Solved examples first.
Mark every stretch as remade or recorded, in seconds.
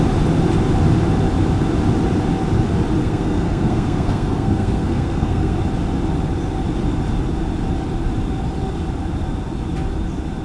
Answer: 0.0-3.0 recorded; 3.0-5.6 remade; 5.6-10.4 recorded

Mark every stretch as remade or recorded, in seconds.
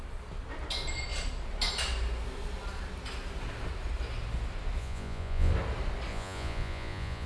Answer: 0.0-4.8 recorded; 4.8-5.5 remade; 5.5-6.1 recorded; 6.1-7.3 remade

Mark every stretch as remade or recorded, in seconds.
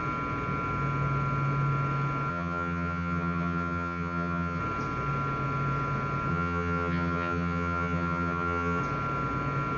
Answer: 0.0-2.3 recorded; 2.3-4.6 remade; 4.6-6.3 recorded; 6.3-8.8 remade; 8.8-9.8 recorded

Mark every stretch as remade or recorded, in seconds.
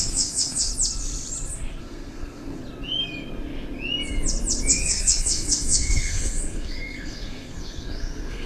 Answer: 0.0-0.7 remade; 0.7-1.8 recorded; 1.8-2.6 remade; 2.6-4.7 recorded; 4.7-8.5 remade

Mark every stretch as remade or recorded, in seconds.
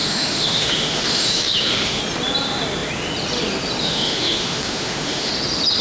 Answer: 0.0-2.0 remade; 2.0-3.8 recorded; 3.8-5.3 remade; 5.3-5.8 recorded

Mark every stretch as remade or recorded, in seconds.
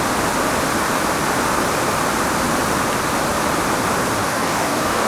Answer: 0.0-4.2 recorded; 4.2-5.1 remade